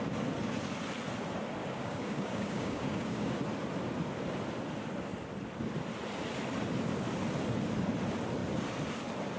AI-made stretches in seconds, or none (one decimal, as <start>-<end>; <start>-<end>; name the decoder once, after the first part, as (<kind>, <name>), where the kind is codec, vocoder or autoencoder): 1.6-3.4 (codec, DAC)